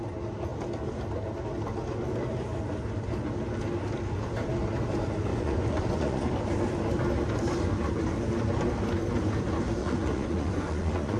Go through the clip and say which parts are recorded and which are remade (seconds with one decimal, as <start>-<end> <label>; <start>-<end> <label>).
0.0-5.3 recorded; 5.3-6.3 remade; 6.3-9.8 recorded; 9.8-11.2 remade